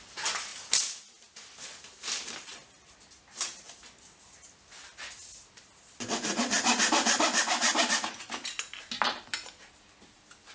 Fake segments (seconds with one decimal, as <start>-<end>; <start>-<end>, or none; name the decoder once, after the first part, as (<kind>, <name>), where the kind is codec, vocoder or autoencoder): none